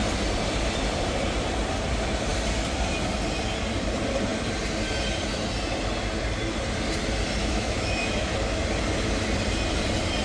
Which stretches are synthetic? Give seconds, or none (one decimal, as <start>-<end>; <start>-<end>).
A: 7.4-8.3